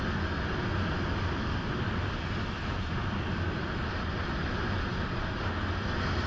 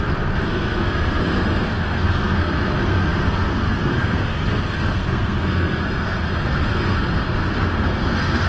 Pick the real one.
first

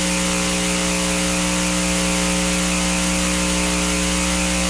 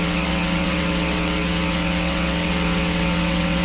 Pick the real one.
first